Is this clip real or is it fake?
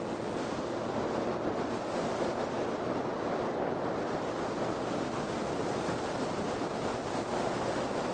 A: real